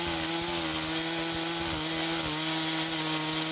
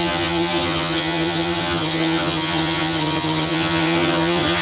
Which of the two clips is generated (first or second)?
second